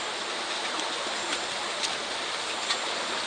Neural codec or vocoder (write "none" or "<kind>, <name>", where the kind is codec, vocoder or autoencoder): none